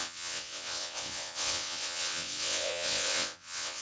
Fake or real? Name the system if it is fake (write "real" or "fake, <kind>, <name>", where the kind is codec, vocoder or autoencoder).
fake, vocoder, WaveNeXt